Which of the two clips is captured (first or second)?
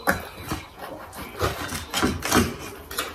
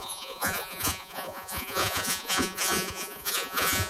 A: first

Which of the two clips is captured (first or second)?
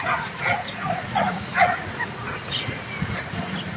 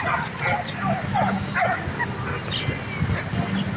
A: second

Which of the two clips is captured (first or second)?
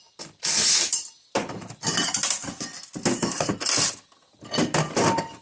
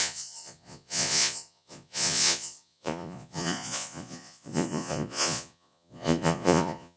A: first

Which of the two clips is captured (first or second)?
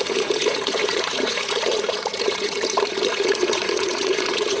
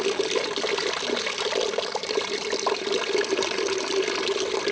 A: second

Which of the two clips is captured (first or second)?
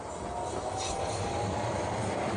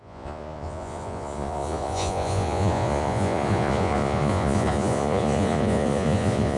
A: first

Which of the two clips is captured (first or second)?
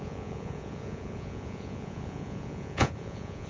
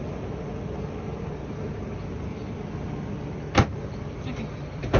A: second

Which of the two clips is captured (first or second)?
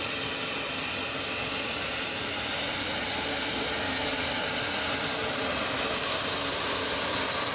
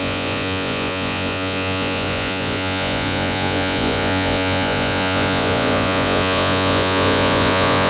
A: first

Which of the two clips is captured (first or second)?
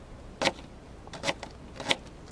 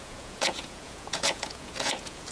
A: first